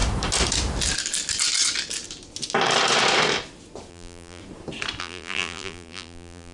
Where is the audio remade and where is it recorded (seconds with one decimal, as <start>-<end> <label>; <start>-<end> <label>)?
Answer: 0.0-3.9 recorded; 3.9-4.4 remade; 4.4-5.0 recorded; 5.0-6.5 remade